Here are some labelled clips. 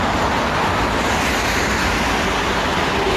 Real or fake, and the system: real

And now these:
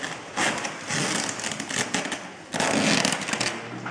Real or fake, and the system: real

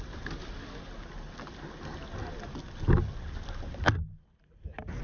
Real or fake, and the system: real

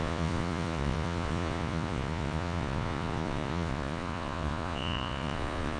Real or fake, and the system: fake, vocoder, Vocos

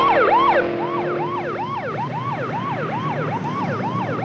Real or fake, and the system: real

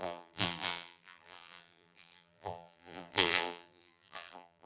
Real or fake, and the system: fake, vocoder, BigVGAN v2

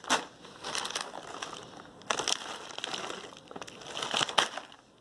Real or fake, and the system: real